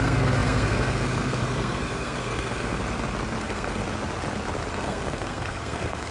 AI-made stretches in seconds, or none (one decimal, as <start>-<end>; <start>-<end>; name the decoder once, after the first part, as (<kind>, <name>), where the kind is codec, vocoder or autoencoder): 0.0-2.8 (codec, SNAC); 3.4-3.8; 4.7-6.1